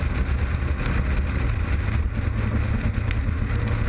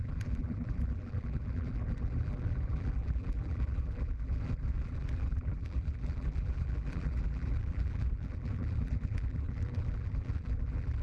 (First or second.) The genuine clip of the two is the first